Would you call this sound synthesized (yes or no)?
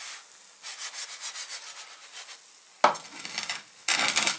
no